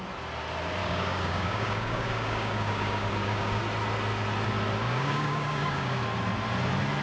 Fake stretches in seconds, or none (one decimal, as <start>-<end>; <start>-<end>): 0.8-3.6; 4.8-6.0